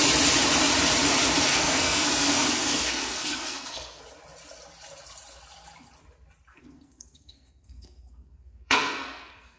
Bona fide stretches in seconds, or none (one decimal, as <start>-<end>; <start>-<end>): 0.0-1.5; 4.0-6.5